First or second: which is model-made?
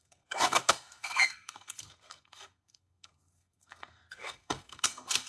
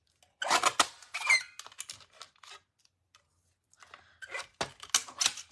first